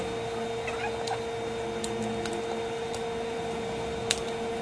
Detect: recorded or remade recorded